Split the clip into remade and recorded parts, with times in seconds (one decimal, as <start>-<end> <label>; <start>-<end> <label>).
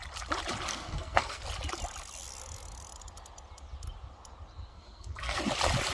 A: 0.0-0.7 recorded; 0.7-1.4 remade; 1.4-4.7 recorded; 4.7-5.4 remade; 5.4-5.9 recorded